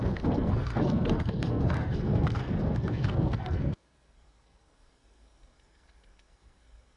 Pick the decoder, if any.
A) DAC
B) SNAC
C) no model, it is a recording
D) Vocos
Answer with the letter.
B